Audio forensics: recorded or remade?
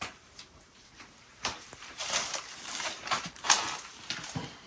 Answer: remade